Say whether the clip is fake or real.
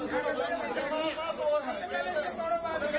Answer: real